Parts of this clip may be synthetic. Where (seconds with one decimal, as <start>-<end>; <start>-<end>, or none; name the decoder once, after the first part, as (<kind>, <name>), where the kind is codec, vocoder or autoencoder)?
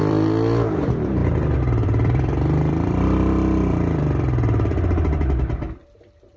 0.0-6.4 (vocoder, BigVGAN v2)